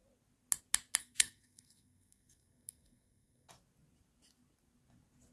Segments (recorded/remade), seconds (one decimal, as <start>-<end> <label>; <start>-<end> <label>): 0.0-1.0 recorded; 1.0-3.5 remade; 3.5-5.3 recorded